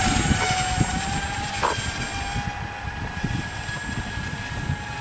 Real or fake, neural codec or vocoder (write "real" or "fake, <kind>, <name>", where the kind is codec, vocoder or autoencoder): real